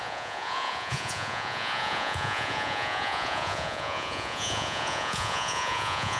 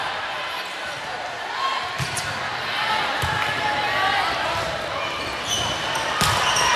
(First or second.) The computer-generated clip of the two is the first